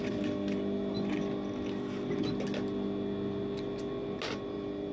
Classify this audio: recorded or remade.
recorded